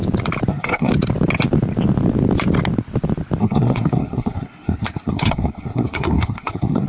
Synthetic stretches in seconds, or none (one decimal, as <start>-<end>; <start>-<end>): 0.5-0.9; 3.4-6.9

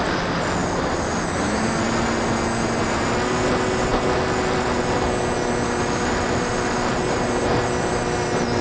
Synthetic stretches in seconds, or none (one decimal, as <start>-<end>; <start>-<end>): none

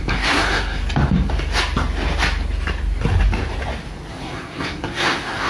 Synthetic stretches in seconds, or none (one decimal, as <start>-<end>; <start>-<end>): 0.0-0.8; 4.1-5.5